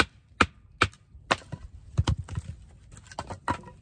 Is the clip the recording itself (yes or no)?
yes